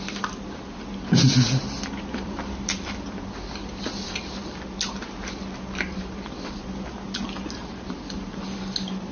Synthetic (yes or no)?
no